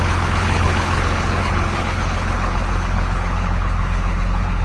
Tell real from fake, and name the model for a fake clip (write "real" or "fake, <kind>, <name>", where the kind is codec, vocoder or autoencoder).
fake, codec, HILCodec